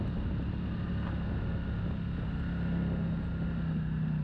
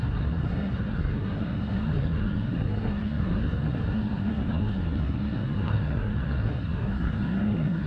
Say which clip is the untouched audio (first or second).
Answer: first